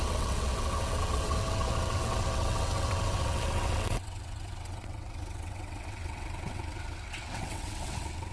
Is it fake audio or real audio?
fake